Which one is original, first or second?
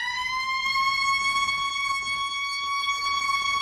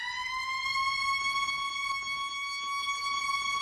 second